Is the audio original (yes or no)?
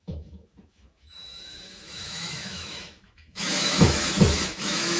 no